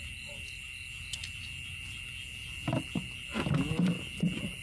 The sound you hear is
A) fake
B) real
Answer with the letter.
B